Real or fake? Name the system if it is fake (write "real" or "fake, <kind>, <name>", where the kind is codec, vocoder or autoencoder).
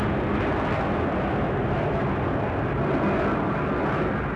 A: real